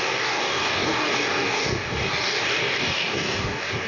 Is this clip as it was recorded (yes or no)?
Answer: no